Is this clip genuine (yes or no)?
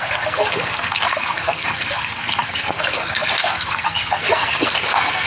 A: no